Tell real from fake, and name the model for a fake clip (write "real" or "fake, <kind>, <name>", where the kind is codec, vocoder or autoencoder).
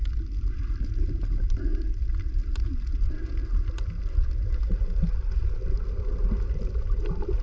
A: real